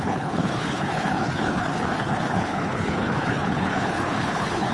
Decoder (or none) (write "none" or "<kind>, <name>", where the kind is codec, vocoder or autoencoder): codec, HILCodec